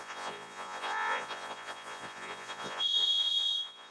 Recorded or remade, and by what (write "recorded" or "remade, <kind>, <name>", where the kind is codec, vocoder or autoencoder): remade, vocoder, Vocos